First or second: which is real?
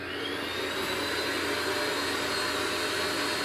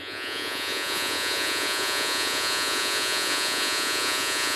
first